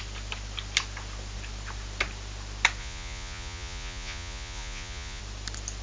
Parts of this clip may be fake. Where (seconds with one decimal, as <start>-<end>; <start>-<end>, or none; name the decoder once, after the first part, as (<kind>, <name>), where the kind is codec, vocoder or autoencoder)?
2.8-5.2 (vocoder, Vocos)